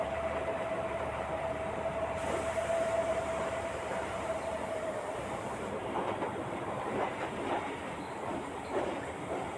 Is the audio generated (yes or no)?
yes